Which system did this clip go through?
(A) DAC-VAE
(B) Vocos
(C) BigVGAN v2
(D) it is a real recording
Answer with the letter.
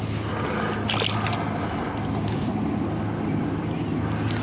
D